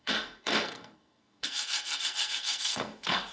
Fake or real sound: fake